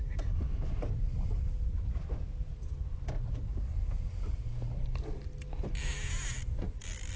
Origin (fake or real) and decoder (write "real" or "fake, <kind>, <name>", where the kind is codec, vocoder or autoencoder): real